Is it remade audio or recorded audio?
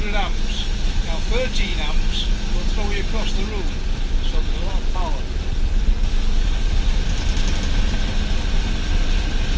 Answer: recorded